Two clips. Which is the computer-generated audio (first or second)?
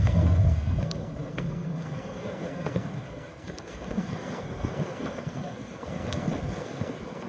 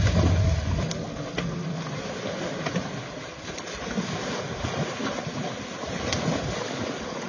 first